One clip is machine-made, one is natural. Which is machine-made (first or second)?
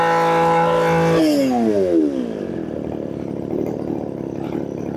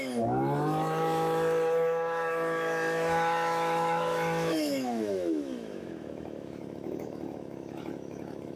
second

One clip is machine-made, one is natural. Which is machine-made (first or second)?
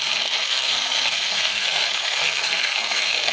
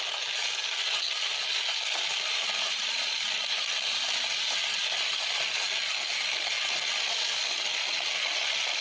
first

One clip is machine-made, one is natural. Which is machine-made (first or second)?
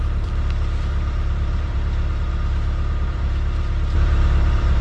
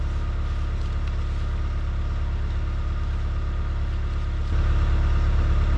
first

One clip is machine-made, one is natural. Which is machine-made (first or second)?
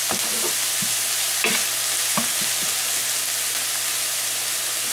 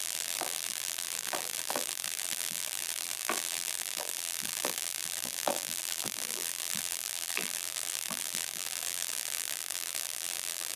second